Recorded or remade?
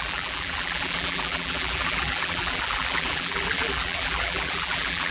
remade